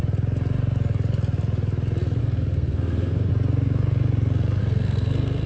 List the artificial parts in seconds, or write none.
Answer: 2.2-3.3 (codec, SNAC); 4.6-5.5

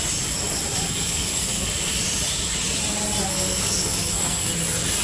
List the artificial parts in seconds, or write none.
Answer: 0.8-1.7 (codec, SNAC); 3.3-4.5

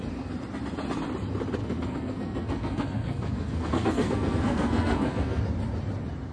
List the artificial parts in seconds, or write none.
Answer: 1.6-5.4 (codec, SNAC)

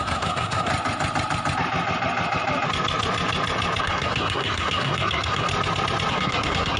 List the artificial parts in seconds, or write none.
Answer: 0.0-0.7 (codec, SNAC); 3.8-5.5; 6.1-6.8

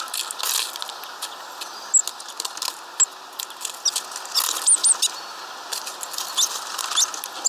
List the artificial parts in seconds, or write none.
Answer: none